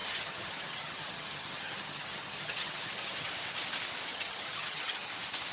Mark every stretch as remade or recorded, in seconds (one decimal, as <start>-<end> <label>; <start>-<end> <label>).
0.0-3.3 remade; 3.3-4.1 recorded; 4.1-5.1 remade; 5.1-5.5 recorded